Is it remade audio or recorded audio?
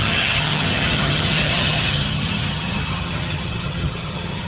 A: remade